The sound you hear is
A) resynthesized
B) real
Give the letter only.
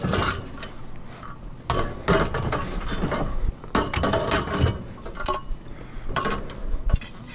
B